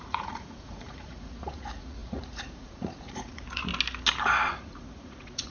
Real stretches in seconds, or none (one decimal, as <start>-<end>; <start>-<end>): 3.7-4.5